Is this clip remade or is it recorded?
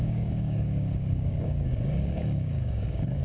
remade